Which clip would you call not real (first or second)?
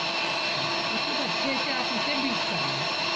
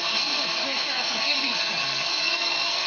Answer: second